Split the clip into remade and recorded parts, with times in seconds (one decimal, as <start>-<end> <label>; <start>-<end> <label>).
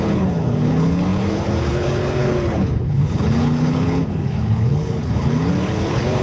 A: 0.0-6.2 remade